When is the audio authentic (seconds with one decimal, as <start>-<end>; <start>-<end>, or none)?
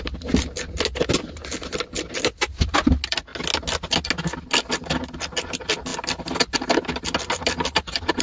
0.0-8.2